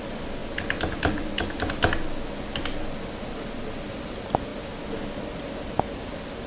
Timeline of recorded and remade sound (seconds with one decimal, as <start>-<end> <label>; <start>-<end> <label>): 0.0-6.5 recorded